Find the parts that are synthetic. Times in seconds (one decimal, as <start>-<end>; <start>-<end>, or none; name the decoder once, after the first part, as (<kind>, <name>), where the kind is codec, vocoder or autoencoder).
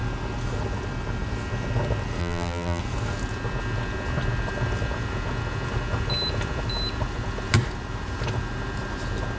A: 2.2-2.8 (vocoder, BigVGAN v2)